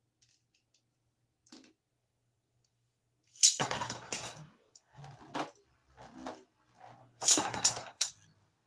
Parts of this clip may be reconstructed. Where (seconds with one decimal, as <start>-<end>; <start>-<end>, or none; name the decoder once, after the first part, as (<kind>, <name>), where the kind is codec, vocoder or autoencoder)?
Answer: 1.9-5.0 (codec, SNAC); 7.0-8.1